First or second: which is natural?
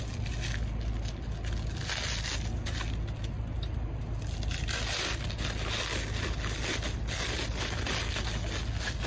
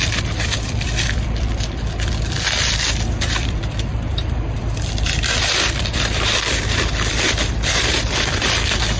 first